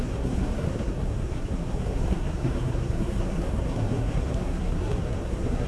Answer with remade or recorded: remade